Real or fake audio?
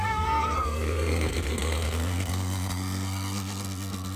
fake